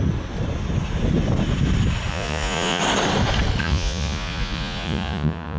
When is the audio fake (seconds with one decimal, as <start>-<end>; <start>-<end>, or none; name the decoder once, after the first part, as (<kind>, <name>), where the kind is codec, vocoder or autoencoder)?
2.1-2.8 (vocoder, Vocos); 3.6-5.6